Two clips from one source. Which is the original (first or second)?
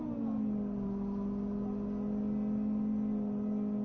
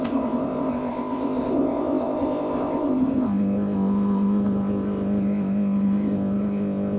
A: first